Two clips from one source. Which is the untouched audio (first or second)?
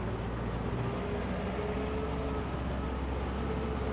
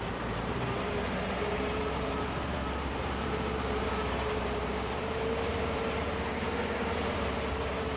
first